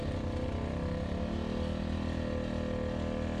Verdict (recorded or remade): recorded